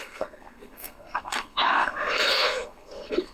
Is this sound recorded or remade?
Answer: remade